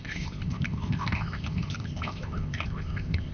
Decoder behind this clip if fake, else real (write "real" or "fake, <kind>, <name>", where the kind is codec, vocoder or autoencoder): fake, codec, ZipCodec